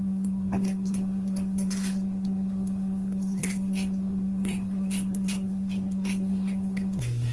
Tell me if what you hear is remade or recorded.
remade